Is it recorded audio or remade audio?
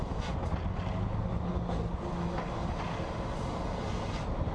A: recorded